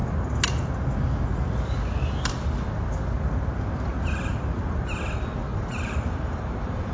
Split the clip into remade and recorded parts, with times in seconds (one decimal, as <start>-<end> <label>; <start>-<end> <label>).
0.0-5.5 recorded; 5.5-6.9 remade